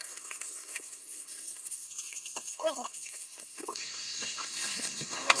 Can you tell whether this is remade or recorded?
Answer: remade